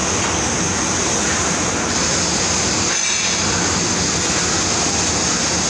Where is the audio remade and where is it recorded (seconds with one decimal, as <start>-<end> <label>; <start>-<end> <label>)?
0.0-0.6 recorded; 0.6-2.0 remade; 2.0-5.7 recorded